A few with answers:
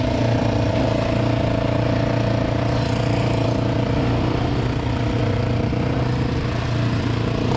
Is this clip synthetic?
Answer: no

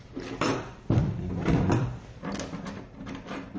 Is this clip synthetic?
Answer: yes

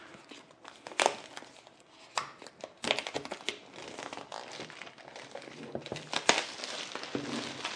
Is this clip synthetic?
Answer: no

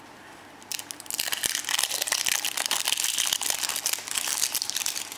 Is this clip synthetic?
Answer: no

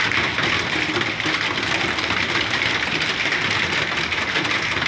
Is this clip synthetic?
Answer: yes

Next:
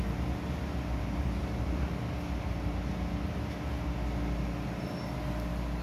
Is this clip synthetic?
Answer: no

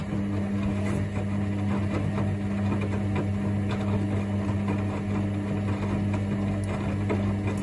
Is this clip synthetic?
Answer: no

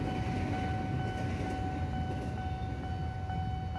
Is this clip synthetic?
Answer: no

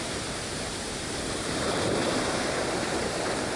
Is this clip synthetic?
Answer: yes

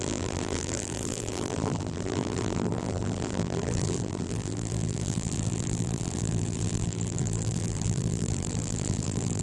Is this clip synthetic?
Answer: yes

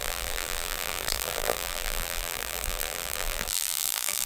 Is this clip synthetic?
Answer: yes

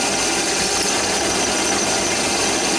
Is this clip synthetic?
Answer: no